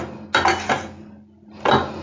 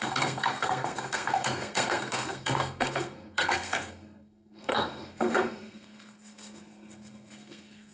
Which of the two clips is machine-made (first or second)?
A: second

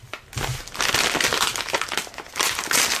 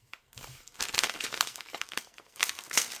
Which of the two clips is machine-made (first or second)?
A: second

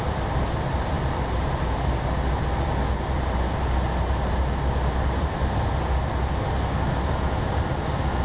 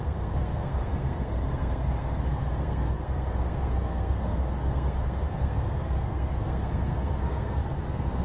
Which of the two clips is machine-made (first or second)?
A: second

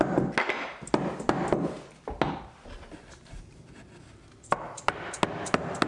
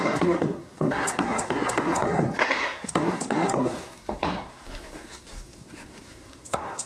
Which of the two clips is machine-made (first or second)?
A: second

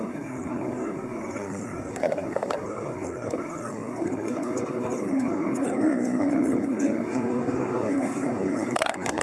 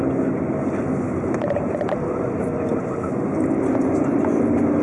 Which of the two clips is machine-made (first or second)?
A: first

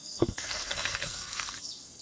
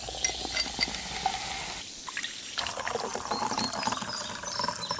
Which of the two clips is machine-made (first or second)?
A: first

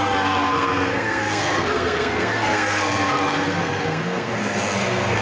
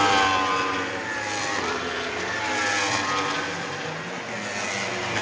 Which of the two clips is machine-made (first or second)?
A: first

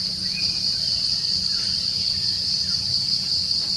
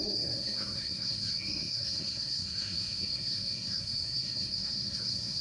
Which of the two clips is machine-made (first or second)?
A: second